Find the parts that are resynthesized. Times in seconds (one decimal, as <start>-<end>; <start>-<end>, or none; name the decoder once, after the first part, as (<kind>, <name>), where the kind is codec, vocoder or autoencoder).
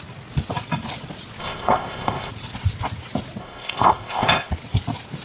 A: 1.4-2.3 (codec, ZipCodec); 3.4-4.5